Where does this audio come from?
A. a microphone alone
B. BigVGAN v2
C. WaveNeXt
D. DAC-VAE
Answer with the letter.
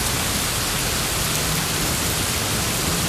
A